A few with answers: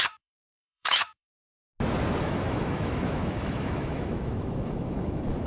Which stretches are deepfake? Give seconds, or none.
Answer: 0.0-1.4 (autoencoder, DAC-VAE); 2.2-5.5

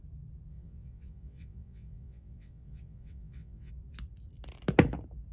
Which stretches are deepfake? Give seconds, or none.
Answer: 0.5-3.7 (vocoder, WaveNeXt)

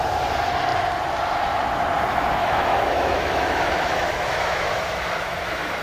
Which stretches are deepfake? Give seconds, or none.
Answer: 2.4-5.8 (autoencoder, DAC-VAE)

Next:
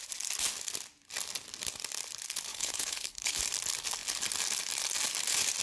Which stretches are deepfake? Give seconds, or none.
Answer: 2.5-3.4 (codec, HILCodec)